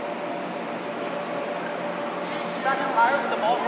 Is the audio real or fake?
real